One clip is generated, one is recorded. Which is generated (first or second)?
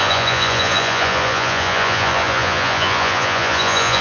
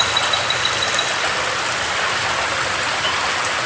first